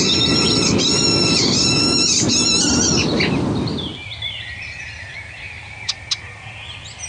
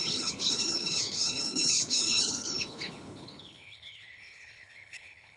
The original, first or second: first